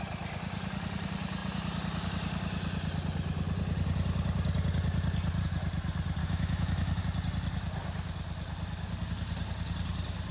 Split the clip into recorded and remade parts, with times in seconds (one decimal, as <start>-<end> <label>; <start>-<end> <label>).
0.0-6.2 recorded; 6.2-7.0 remade; 7.0-10.3 recorded